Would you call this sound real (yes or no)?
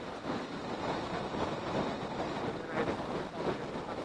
yes